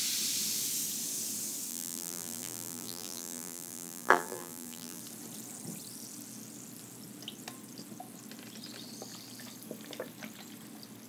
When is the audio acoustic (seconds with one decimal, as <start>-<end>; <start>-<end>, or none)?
0.0-1.7; 5.0-11.1